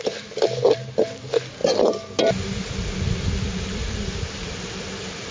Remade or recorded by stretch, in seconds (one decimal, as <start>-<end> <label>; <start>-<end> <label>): 0.0-5.3 recorded